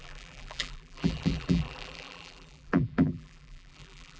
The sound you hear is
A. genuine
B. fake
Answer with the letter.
B